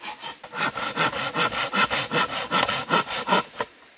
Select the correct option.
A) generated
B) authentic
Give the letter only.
B